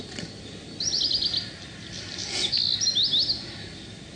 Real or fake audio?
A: real